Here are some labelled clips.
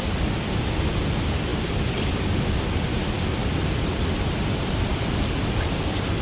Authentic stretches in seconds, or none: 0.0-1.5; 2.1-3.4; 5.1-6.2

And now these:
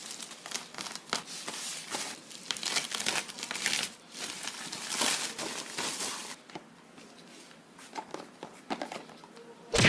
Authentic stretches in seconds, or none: 0.0-9.9

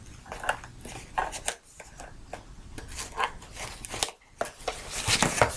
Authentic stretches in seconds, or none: 0.0-5.6

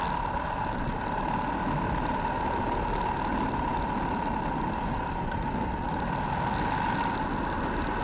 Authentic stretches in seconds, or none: 0.0-8.0

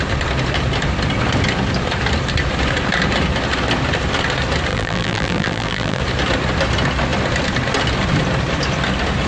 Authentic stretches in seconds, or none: 0.0-4.7; 6.0-9.3

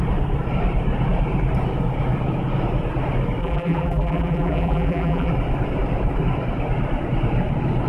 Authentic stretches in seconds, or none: 0.0-3.4; 5.3-7.9

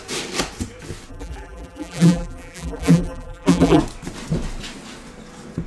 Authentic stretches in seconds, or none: 0.0-1.1; 3.8-5.7

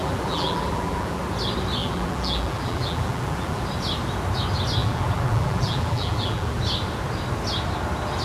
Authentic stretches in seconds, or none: 1.2-1.8; 3.6-4.8; 6.6-8.2